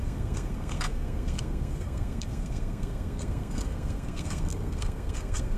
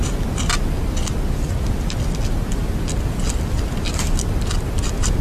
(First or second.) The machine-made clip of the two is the first